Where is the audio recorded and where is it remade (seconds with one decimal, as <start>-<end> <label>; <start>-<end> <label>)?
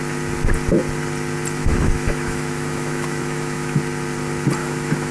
0.0-1.6 recorded; 1.6-3.8 remade; 3.8-4.6 recorded; 4.6-5.1 remade